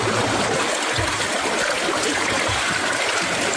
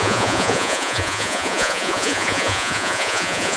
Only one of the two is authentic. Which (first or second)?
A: first